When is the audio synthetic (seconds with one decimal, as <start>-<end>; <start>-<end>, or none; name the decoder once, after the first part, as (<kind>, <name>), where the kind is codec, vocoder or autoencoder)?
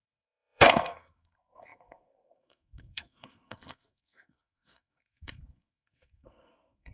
0.0-6.9 (codec, SNAC)